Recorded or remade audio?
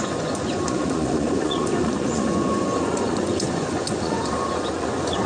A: remade